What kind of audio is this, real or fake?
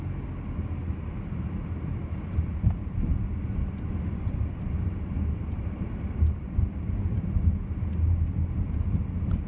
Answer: real